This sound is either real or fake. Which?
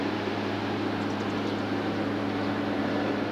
real